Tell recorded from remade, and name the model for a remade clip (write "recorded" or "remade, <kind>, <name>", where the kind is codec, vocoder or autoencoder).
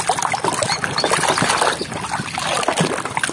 recorded